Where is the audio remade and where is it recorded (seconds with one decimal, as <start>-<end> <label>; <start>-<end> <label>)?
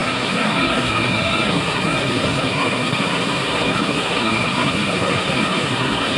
0.0-6.2 remade